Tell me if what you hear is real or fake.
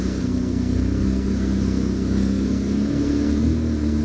fake